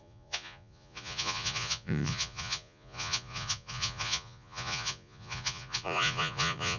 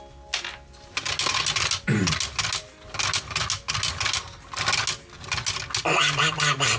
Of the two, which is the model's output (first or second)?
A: first